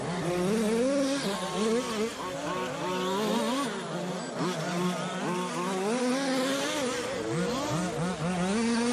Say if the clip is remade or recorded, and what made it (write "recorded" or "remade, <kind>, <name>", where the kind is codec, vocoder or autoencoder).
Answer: recorded